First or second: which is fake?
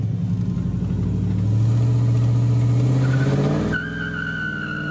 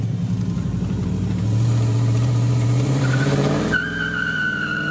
second